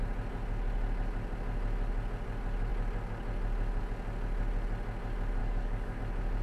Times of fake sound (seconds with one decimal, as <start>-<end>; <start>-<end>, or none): 5.4-6.0